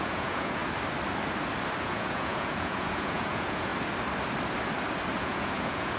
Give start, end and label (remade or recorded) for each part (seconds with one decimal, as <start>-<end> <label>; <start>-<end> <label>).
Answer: 0.0-0.6 remade; 0.6-1.8 recorded; 1.8-3.7 remade; 3.7-5.2 recorded; 5.2-6.0 remade